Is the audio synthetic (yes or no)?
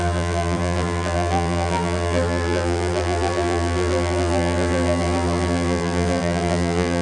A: yes